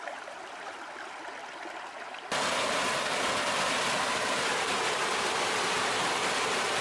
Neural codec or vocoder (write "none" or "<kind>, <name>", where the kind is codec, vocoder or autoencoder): none